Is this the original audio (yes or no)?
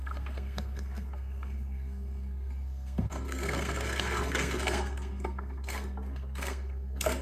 no